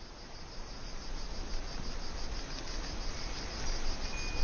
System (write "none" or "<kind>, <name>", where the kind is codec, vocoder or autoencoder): none